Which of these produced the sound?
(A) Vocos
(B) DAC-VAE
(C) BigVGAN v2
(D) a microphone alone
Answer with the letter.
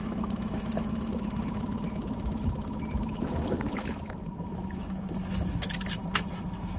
B